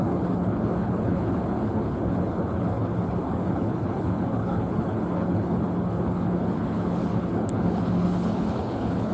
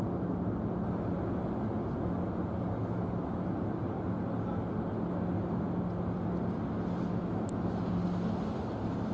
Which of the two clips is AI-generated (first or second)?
first